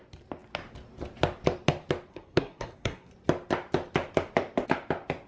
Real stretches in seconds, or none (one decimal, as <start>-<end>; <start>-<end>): 0.0-2.1; 3.1-5.3